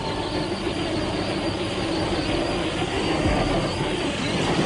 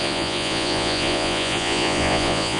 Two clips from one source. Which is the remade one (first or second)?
second